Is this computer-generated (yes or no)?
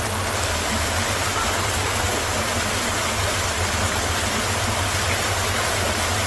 no